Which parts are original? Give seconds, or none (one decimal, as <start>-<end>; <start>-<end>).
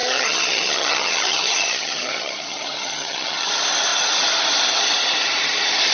3.5-5.9